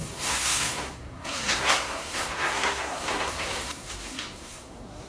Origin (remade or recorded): remade